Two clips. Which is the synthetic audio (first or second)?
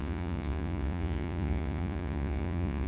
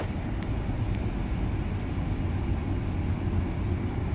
first